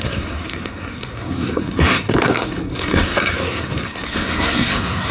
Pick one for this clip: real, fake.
fake